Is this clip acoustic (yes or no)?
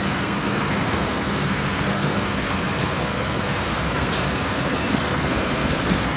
no